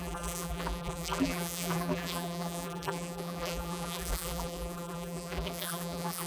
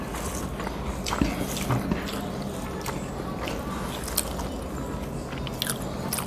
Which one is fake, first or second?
first